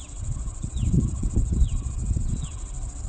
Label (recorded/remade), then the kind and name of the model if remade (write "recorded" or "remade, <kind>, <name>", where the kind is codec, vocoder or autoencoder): remade, vocoder, WaveNeXt